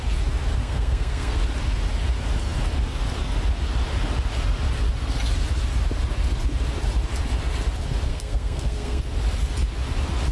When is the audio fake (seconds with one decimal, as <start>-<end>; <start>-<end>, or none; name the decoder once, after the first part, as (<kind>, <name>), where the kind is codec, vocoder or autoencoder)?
0.6-1.4 (codec, SNAC); 8.1-9.0